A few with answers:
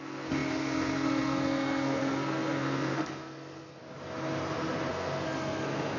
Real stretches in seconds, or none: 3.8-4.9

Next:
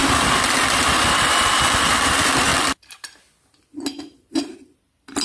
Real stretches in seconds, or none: 2.5-4.0